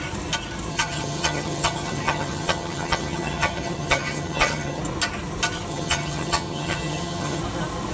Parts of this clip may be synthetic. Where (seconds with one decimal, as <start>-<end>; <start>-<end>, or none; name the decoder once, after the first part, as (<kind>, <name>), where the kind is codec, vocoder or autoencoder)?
0.7-4.8 (vocoder, HiFi-GAN); 5.7-7.4